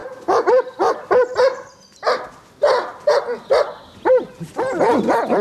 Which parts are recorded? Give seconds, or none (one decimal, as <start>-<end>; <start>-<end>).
0.0-5.4